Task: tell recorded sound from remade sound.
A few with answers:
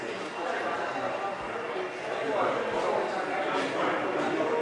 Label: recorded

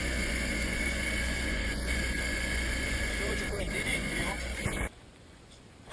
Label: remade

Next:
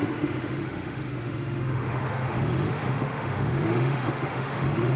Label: remade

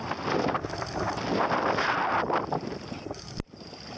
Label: recorded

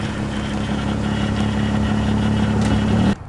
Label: recorded